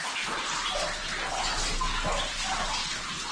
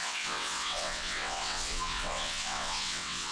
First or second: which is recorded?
first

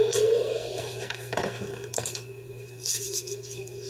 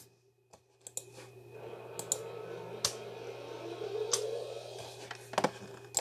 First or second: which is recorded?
second